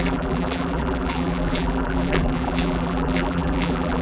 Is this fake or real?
fake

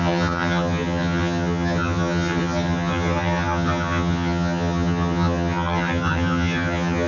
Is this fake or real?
fake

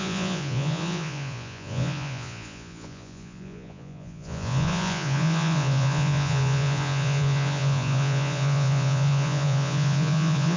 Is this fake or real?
fake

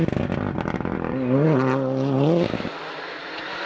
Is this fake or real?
real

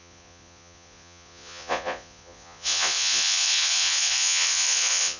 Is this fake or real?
fake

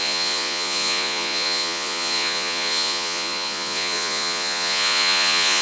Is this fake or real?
fake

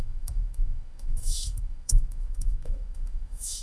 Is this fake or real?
fake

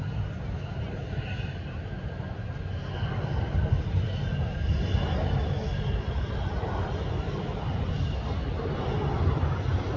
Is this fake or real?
real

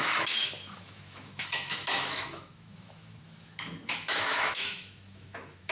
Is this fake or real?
fake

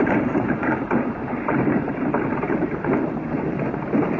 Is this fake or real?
fake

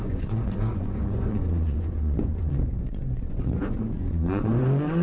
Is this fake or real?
fake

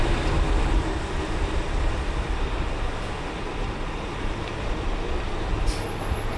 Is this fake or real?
real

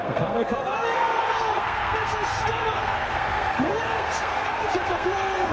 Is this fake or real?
fake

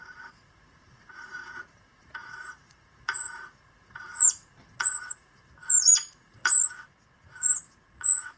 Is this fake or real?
fake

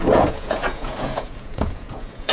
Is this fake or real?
fake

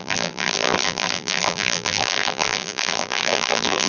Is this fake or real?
fake